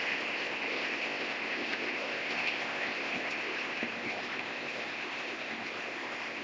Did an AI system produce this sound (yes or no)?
yes